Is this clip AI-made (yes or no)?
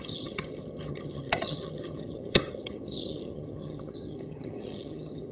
yes